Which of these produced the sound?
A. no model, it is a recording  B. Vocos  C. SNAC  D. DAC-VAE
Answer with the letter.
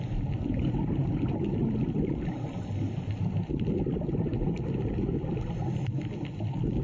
A